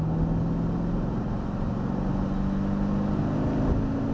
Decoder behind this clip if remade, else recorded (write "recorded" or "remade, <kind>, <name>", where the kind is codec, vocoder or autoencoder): recorded